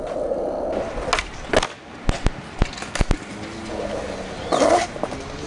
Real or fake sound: real